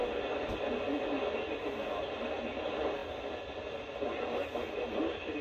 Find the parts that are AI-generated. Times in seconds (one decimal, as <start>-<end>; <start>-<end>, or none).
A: none